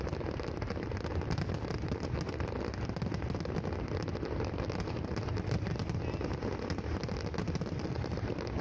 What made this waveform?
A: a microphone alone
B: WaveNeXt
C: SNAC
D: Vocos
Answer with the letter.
A